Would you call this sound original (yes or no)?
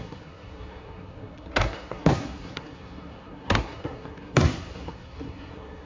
no